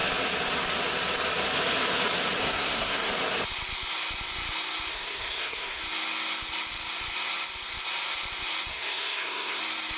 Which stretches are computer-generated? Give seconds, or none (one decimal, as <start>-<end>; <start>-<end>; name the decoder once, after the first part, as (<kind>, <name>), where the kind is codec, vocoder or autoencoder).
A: 2.4-3.1 (codec, SNAC); 4.9-5.8; 8.7-9.6